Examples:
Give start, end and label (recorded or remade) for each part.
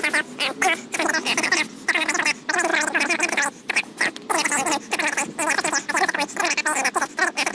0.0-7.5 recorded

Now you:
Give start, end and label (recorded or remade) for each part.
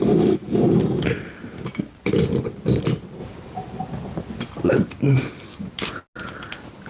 0.0-6.9 recorded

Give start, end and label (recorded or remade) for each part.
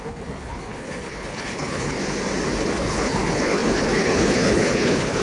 0.0-2.0 remade; 2.0-2.6 recorded; 2.6-5.2 remade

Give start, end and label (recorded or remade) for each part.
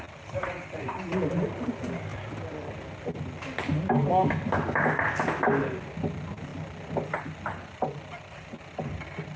0.0-9.4 recorded